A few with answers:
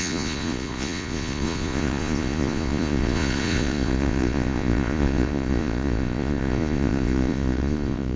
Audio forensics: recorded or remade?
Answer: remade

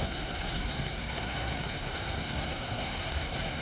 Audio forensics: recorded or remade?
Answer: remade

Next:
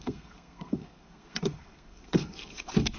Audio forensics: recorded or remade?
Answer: remade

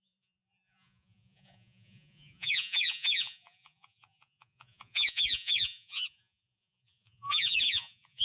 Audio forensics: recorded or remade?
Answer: remade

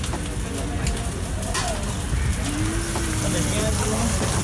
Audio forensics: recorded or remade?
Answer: recorded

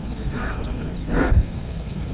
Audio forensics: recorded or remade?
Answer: remade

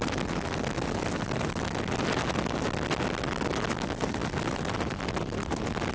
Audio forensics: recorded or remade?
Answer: recorded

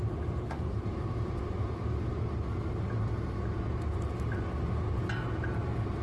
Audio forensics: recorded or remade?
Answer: recorded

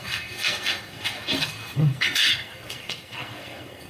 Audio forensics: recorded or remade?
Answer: remade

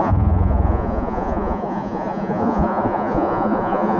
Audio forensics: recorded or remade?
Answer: remade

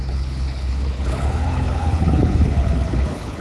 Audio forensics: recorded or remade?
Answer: remade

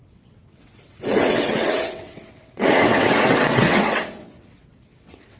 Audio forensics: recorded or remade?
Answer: remade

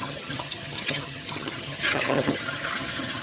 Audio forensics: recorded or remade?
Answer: remade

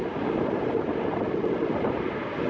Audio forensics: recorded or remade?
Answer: recorded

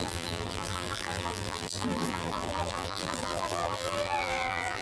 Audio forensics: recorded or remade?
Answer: remade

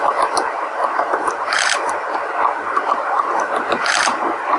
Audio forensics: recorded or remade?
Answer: recorded